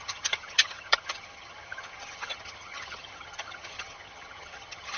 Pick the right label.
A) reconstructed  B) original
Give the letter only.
A